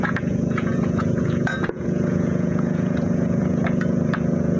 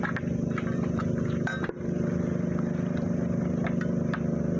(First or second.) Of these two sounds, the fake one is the first